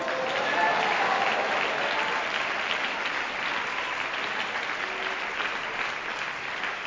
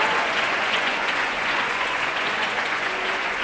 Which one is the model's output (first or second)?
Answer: second